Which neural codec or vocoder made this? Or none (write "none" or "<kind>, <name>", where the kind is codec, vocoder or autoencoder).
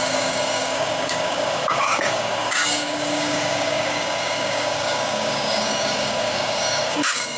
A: codec, DAC